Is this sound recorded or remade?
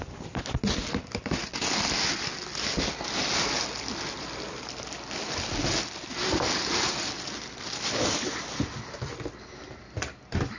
recorded